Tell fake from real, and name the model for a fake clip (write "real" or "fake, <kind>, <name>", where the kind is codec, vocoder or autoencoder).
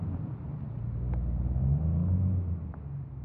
real